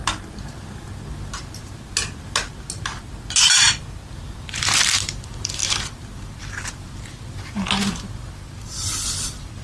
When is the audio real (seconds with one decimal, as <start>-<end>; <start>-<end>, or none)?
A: 0.0-4.6